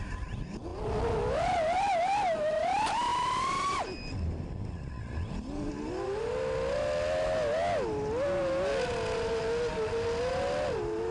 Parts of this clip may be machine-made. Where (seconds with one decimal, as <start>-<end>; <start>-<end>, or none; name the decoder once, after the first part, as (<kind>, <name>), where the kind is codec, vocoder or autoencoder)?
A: 3.1-3.8 (vocoder, BigVGAN v2)